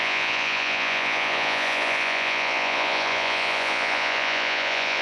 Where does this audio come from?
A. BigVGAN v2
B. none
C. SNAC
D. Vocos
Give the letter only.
D